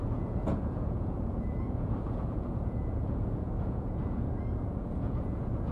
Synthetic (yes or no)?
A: yes